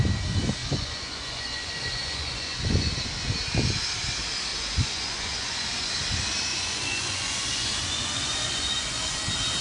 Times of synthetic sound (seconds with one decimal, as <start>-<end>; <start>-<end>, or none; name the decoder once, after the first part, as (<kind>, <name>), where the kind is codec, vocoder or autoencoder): 0.6-2.9 (vocoder, Vocos); 4.5-5.9; 6.5-9.2